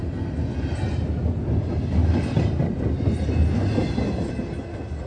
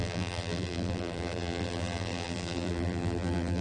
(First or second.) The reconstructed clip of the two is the second